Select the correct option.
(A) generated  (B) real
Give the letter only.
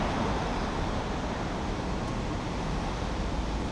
B